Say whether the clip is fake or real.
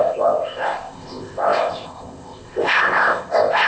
fake